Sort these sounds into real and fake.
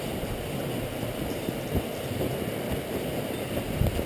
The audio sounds real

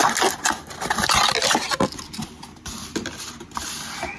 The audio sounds real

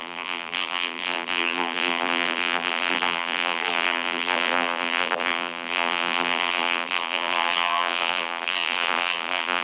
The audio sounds fake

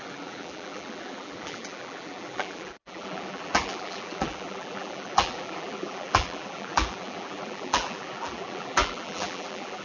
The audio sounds fake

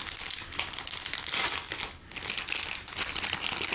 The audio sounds real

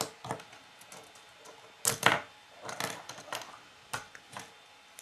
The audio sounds real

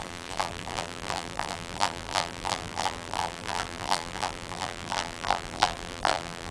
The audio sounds fake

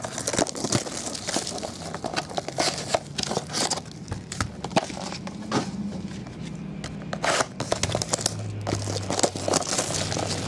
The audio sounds real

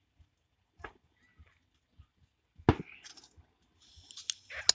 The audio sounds real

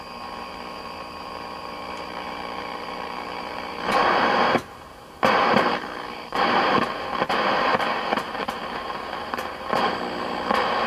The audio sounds fake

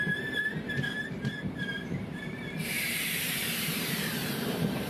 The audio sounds fake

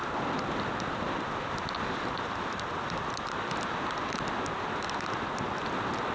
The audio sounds real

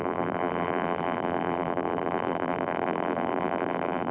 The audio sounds fake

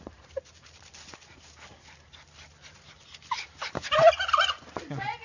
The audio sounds real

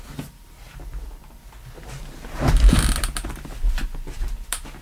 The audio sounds fake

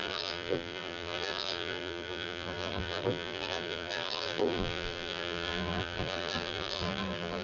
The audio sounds fake